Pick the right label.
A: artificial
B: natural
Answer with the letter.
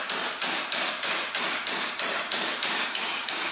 A